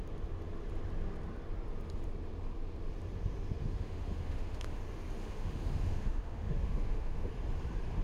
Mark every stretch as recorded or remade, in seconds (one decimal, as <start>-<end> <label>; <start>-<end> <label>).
0.0-3.6 recorded; 3.6-4.8 remade; 4.8-5.2 recorded; 5.2-7.3 remade; 7.3-8.0 recorded